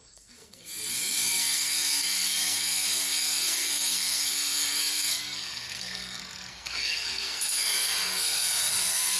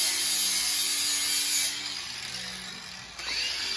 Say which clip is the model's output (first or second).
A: first